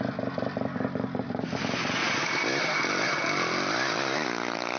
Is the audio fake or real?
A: real